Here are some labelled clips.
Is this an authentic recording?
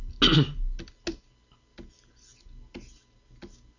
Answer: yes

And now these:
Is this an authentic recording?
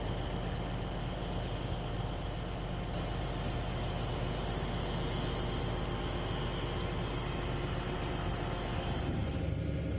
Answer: yes